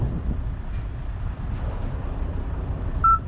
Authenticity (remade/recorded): recorded